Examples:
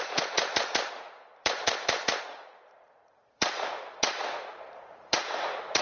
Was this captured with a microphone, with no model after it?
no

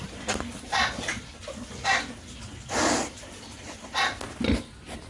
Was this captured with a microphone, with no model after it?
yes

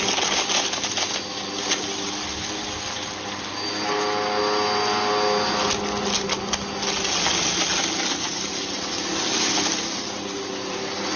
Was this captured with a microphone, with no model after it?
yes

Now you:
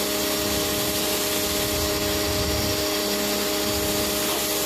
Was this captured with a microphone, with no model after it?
yes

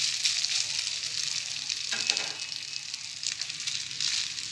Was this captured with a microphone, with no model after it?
yes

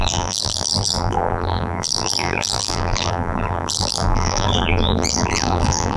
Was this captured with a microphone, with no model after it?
no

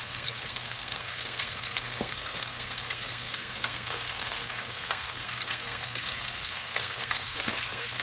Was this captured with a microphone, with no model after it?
no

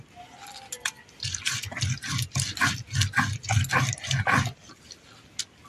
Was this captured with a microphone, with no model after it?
yes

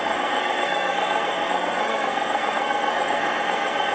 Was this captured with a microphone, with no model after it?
no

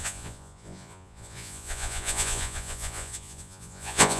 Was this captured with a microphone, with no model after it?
no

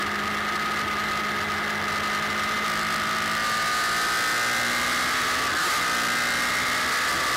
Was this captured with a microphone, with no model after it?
yes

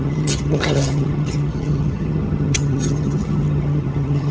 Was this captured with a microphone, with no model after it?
no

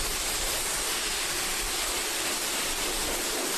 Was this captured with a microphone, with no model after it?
yes